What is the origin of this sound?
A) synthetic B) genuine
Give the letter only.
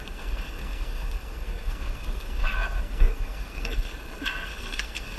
A